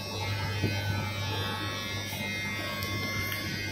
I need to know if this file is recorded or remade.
recorded